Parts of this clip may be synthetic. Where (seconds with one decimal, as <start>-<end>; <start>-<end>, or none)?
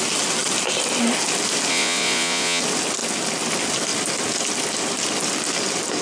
1.7-2.6